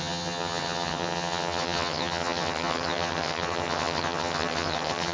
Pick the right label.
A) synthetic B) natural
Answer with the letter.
A